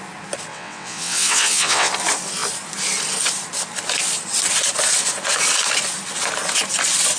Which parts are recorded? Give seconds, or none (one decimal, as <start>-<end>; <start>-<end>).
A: 0.0-0.5; 1.9-7.2